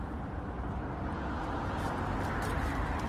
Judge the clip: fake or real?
real